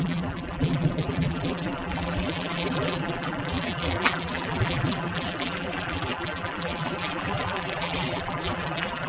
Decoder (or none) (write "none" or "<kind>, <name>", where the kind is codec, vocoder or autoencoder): vocoder, BigVGAN v2